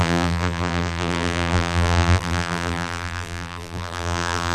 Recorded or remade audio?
remade